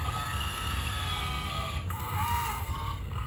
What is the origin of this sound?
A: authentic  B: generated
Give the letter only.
B